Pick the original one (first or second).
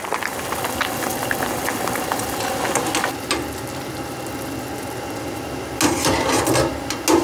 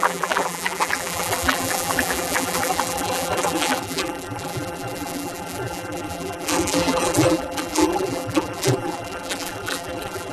first